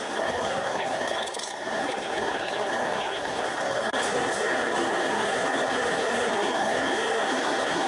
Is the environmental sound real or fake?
fake